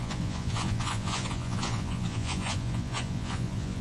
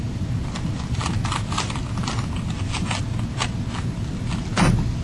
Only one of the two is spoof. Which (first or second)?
first